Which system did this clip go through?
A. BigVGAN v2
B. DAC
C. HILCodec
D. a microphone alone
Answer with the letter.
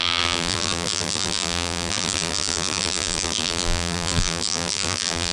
A